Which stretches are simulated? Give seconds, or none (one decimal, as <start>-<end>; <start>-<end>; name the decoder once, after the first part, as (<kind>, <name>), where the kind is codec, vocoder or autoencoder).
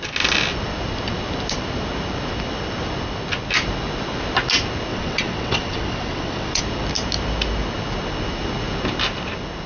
4.9-6.6 (vocoder, WaveNeXt)